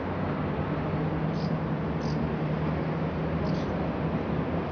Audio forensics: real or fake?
real